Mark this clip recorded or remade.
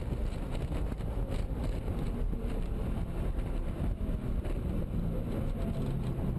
remade